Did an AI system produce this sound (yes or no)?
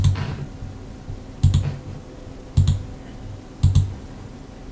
no